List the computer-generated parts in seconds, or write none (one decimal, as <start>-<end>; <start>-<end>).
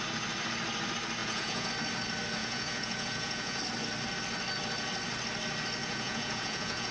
1.2-1.7; 2.4-3.6; 5.8-6.9